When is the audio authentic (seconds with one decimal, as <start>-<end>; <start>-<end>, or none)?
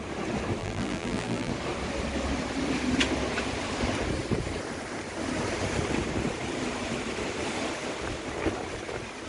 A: 0.0-0.6; 1.5-9.3